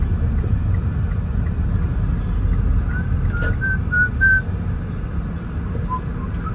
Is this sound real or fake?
real